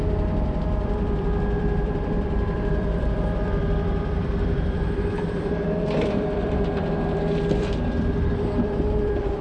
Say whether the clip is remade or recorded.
remade